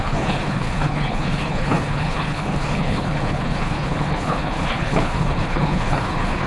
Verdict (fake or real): fake